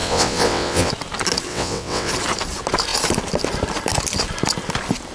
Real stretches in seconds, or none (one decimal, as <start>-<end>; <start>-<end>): 0.9-1.5; 2.1-5.1

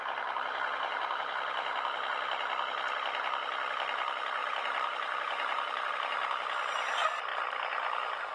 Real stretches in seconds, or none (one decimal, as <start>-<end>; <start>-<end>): 0.0-4.4; 5.9-8.3